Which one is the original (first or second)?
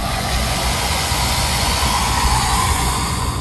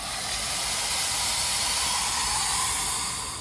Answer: second